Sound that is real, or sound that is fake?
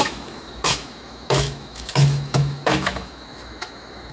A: fake